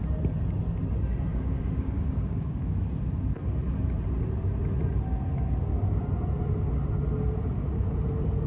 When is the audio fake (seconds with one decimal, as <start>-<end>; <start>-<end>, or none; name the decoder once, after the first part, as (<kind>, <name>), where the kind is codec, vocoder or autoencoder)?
1.3-2.6 (codec, DAC)